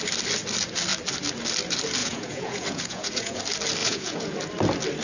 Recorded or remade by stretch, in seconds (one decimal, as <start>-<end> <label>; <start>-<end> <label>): 0.0-2.0 recorded; 2.0-3.4 remade; 3.4-3.8 recorded; 3.8-4.4 remade; 4.4-5.0 recorded